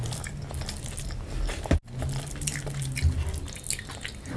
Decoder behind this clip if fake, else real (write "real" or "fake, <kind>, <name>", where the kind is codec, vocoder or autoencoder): real